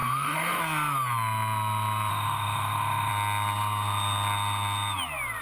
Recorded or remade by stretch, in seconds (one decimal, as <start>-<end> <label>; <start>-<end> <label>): 0.0-0.6 remade; 0.6-2.1 recorded; 2.1-3.1 remade; 3.1-5.4 recorded

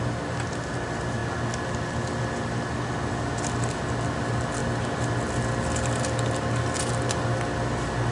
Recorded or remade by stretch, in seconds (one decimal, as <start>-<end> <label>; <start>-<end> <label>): 0.0-8.1 recorded